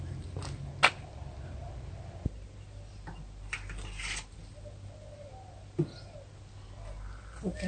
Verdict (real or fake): real